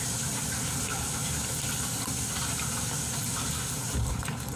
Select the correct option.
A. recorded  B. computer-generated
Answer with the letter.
A